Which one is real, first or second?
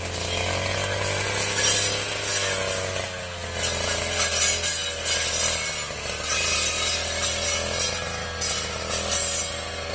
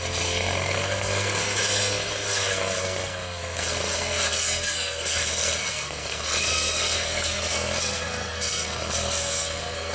first